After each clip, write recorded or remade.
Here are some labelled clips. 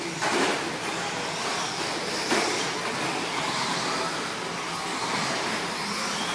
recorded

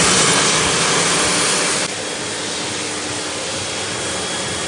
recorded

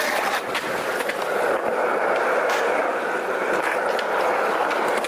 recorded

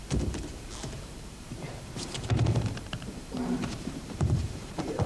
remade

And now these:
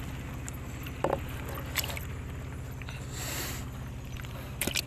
recorded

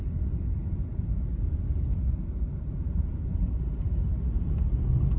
recorded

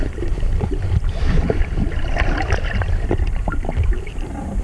remade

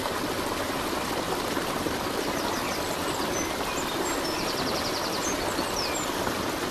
recorded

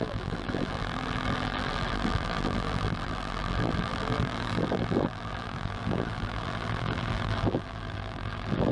remade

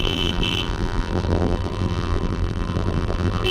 remade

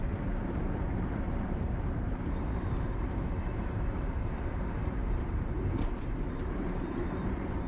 remade